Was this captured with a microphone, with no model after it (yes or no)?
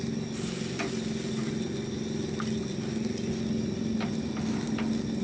yes